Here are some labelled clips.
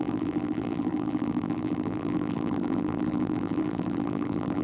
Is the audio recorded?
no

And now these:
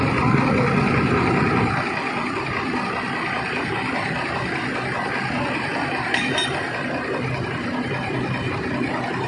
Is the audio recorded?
no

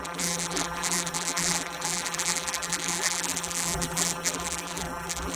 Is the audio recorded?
no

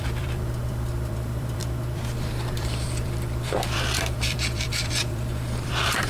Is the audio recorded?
no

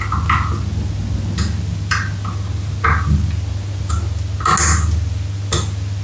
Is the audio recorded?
yes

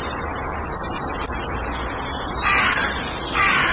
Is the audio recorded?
no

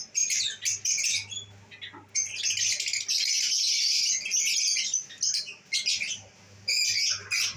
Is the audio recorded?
yes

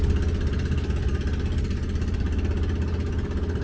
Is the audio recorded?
yes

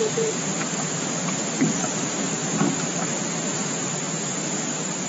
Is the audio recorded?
no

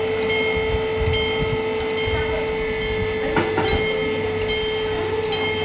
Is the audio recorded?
yes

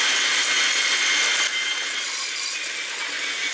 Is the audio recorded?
yes